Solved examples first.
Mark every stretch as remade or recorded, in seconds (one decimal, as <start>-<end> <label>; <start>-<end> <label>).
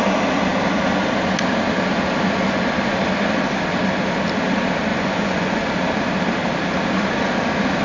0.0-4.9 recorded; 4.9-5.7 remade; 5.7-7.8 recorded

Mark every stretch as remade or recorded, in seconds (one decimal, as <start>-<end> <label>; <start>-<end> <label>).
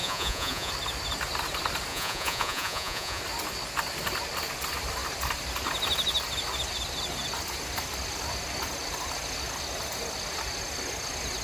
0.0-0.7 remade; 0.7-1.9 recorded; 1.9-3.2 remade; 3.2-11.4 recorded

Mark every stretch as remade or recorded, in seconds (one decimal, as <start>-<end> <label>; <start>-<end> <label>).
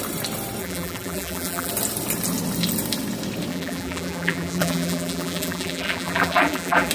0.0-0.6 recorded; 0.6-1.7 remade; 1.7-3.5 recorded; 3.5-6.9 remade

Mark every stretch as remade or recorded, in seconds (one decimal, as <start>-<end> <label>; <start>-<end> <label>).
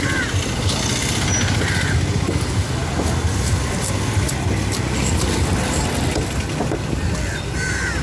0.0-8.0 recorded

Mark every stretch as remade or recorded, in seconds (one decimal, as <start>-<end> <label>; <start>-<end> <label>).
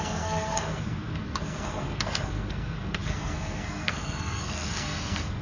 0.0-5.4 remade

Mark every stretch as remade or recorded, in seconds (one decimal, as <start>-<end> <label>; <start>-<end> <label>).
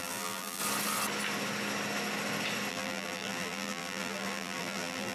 0.0-0.6 remade; 0.6-2.7 recorded; 2.7-5.1 remade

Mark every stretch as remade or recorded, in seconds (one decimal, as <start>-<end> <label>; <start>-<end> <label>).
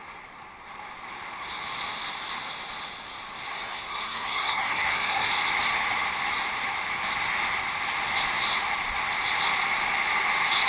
0.0-3.5 recorded; 3.5-5.3 remade; 5.3-10.7 recorded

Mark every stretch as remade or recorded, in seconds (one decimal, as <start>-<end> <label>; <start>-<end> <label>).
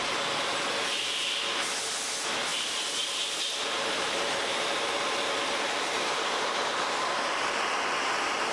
0.0-2.5 recorded; 2.5-7.6 remade; 7.6-8.5 recorded